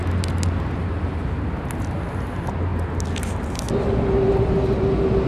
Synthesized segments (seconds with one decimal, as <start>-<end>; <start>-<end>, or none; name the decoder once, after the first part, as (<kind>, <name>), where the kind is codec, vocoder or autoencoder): none